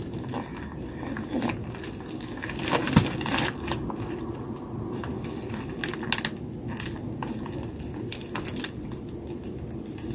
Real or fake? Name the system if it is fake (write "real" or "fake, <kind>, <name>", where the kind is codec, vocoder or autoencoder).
real